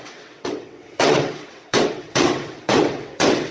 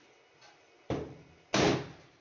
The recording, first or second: second